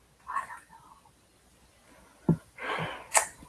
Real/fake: real